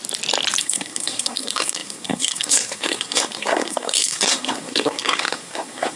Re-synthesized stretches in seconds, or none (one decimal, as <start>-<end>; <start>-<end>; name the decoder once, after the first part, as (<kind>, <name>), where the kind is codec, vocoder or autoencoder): 0.6-6.0 (codec, SNAC)